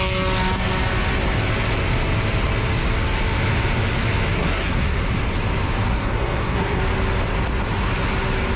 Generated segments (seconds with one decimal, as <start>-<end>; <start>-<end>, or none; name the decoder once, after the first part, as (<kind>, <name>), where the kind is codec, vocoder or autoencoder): 4.4-5.0 (codec, SNAC); 5.9-6.8